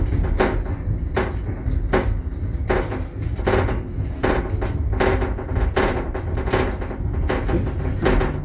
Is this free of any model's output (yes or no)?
yes